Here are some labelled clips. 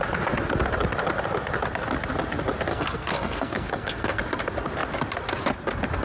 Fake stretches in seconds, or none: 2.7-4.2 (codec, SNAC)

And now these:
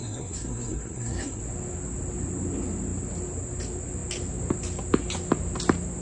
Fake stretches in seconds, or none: 0.0-1.4 (codec, SNAC)